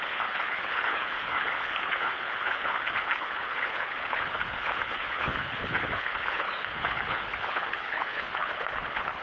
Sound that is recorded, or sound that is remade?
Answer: remade